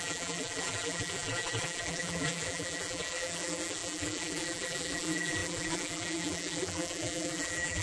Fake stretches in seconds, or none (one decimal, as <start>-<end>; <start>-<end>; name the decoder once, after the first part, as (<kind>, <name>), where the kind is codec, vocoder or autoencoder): 0.0-7.8 (vocoder, BigVGAN v2)